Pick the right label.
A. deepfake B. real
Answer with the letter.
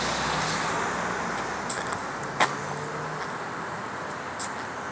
B